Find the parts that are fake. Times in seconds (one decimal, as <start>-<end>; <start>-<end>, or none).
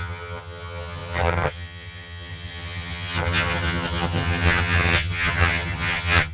0.0-6.3